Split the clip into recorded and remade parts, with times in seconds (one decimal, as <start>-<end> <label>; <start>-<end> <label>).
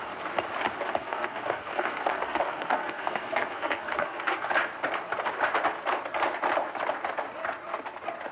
0.0-1.0 recorded; 1.0-4.5 remade; 4.5-8.3 recorded